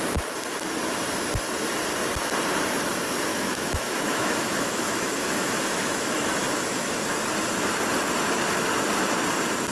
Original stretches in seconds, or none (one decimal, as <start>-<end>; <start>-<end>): 0.0-3.3; 6.9-9.7